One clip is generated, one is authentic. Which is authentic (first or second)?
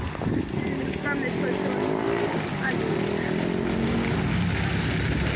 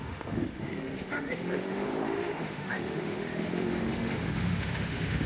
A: first